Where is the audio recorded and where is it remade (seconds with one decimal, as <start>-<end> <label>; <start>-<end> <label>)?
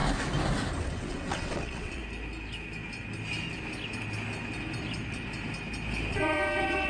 0.0-0.8 recorded; 0.8-2.0 remade; 2.0-6.1 recorded; 6.1-6.9 remade